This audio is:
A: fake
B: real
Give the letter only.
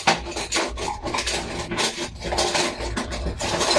A